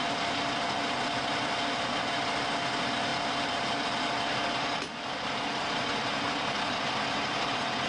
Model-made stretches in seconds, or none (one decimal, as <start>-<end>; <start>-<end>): none